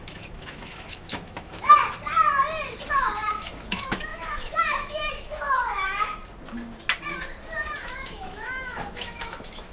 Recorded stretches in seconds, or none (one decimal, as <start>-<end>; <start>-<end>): 1.8-2.9; 6.2-7.8